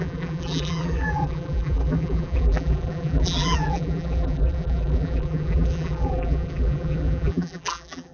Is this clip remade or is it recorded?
remade